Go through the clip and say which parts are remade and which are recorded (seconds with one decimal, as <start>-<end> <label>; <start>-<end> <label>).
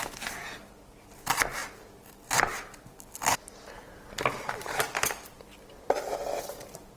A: 0.0-7.0 recorded